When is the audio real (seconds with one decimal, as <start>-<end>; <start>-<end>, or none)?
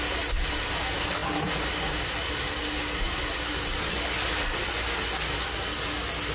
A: 0.0-6.3